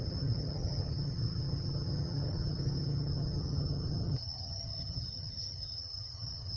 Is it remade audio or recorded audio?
remade